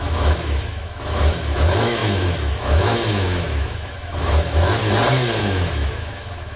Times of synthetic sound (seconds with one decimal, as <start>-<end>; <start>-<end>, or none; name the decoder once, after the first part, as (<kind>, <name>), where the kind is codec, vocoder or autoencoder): 0.0-4.8 (autoencoder, DAC-VAE); 5.4-6.6